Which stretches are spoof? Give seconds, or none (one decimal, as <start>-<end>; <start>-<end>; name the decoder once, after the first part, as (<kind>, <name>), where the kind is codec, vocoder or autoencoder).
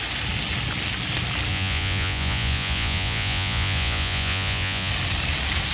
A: 1.5-4.9 (vocoder, Vocos)